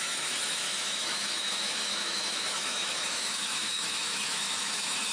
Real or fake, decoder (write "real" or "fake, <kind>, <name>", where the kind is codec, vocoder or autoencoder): fake, autoencoder, DAC-VAE